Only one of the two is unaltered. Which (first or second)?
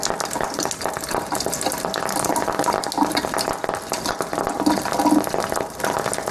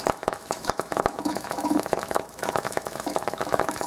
first